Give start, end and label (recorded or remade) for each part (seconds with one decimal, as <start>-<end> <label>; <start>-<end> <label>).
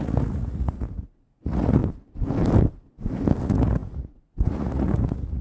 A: 0.0-1.8 remade; 1.8-3.4 recorded; 3.4-5.4 remade